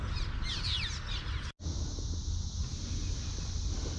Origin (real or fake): real